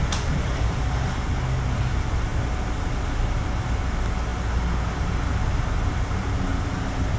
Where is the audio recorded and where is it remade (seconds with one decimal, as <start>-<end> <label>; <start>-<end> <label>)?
0.0-7.2 recorded